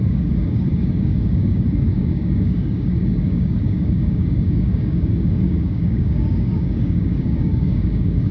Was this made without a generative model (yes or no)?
no